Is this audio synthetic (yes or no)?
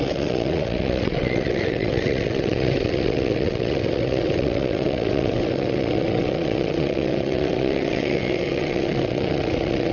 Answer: yes